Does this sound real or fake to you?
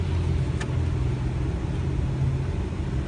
real